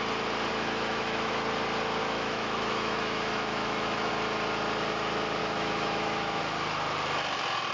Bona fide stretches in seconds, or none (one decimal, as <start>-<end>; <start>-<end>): 0.0-0.5; 1.3-2.0; 4.1-5.4; 6.4-7.7

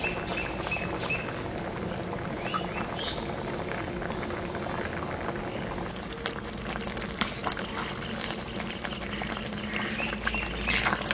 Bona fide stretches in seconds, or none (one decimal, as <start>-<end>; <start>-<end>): 0.0-11.1

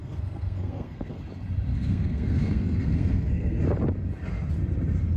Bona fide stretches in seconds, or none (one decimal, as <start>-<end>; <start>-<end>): 1.2-1.7; 3.6-5.2

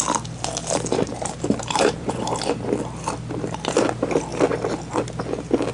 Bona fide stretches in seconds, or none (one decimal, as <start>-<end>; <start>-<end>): 0.0-1.1; 2.4-5.7

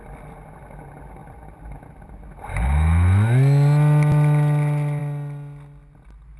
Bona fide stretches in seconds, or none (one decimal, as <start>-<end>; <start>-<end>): 0.0-6.4

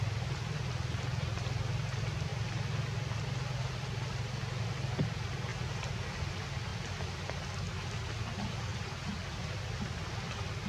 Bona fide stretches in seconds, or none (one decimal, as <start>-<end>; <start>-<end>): 0.0-10.7